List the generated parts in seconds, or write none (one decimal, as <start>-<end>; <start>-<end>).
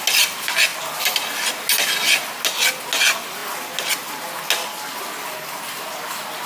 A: 0.7-1.5